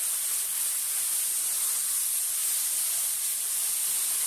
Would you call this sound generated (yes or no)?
no